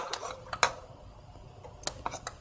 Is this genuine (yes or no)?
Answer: yes